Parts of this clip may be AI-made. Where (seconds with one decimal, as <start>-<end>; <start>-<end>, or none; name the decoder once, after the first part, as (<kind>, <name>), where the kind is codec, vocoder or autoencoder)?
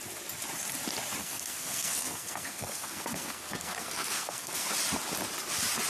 1.2-4.7 (codec, SNAC)